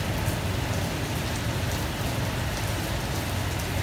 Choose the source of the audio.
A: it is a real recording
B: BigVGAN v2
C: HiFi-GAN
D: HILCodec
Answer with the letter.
A